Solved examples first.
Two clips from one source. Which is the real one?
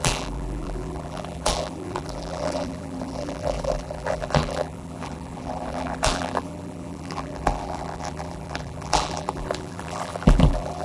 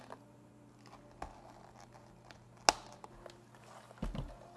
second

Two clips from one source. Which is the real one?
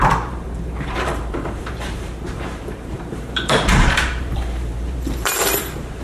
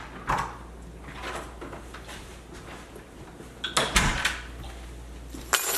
second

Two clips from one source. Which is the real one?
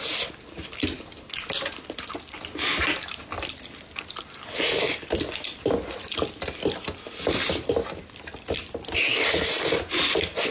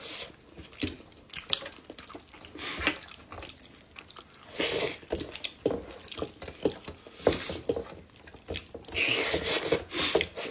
second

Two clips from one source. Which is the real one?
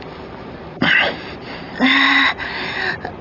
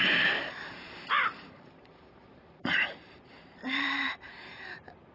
first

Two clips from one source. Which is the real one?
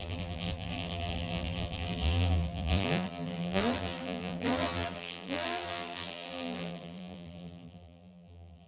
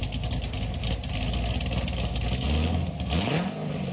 second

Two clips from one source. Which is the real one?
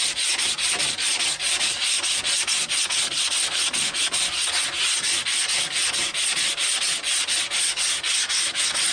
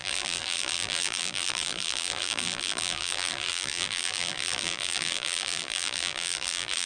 first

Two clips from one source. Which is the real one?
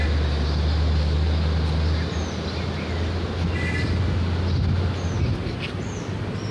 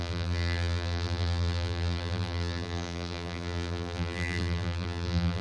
first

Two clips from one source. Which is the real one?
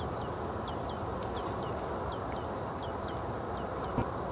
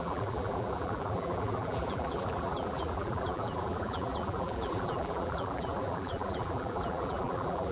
first